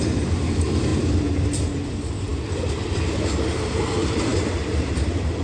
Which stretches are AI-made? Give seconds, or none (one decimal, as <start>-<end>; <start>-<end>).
none